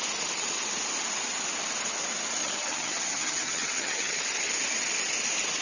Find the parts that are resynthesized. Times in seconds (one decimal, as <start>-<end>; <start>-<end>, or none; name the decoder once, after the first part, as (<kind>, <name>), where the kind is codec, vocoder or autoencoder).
2.4-4.2 (vocoder, HiFi-GAN)